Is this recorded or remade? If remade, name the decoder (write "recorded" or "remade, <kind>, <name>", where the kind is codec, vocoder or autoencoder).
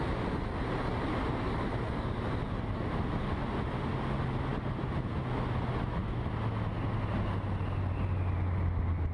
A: recorded